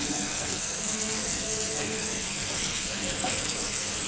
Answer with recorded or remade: remade